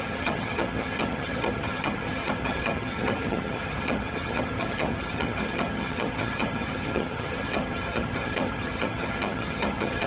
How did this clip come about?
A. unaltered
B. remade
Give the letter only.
B